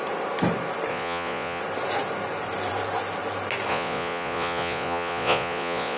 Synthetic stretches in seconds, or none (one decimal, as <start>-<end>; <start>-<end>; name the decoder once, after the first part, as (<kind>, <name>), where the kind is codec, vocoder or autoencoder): 0.9-1.6 (vocoder, Vocos); 3.7-6.0